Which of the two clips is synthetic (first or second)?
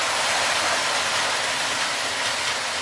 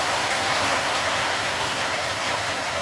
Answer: second